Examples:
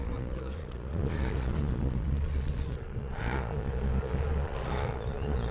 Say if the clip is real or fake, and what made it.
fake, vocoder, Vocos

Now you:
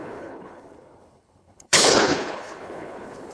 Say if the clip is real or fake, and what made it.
fake, codec, HILCodec